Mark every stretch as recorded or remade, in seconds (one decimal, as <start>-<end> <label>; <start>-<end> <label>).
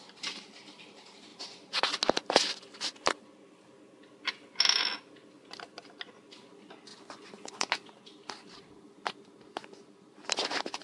0.0-6.9 recorded; 6.9-7.7 remade; 7.7-10.8 recorded